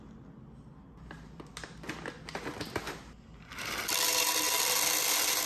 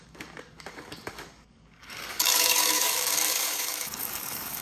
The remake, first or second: second